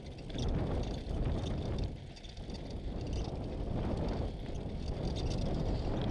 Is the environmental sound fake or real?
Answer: real